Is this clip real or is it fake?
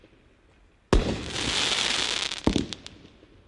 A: real